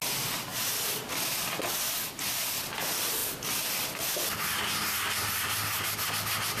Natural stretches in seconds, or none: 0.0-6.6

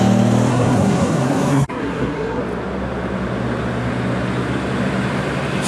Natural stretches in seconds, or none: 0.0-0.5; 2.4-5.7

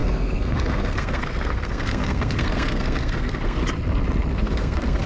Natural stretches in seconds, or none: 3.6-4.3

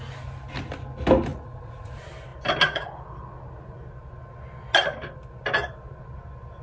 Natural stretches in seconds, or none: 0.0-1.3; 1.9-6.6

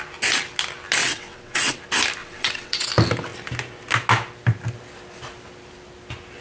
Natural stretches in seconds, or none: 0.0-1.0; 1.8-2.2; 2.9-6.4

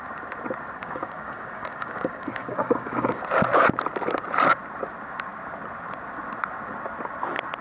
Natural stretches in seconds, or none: 0.0-0.8; 3.2-7.6